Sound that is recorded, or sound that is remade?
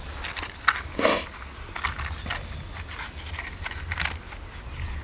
recorded